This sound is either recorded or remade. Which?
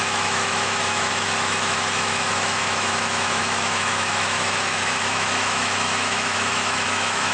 remade